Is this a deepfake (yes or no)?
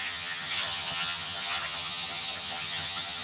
yes